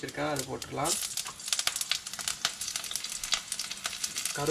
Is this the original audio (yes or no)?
yes